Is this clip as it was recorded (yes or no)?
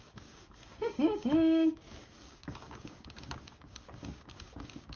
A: no